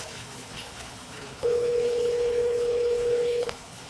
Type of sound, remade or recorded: remade